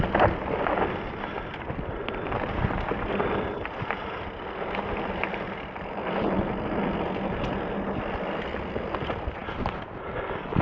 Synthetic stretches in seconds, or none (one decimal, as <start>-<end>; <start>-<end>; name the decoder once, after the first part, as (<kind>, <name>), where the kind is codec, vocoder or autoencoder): none